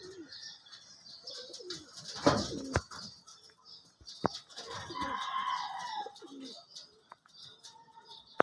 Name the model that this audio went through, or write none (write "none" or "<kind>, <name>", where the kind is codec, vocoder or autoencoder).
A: none